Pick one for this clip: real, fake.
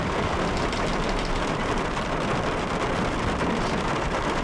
fake